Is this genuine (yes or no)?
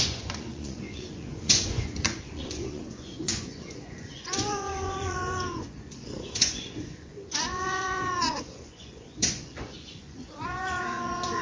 no